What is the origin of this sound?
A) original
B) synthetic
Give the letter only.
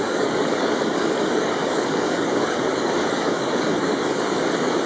B